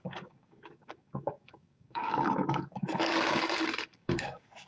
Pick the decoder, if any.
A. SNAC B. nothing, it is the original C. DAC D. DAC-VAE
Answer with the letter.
C